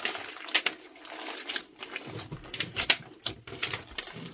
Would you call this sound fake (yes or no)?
no